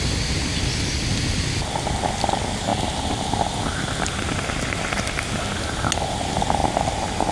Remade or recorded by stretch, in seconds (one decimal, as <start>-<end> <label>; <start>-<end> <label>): 0.0-7.3 recorded